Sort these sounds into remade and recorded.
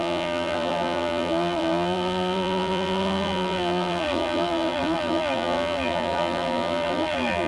remade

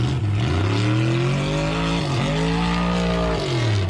recorded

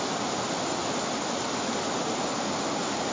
recorded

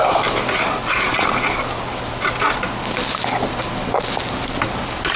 recorded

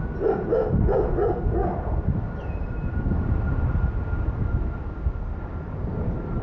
recorded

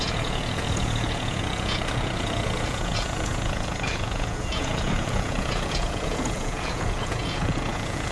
remade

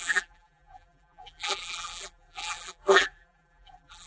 remade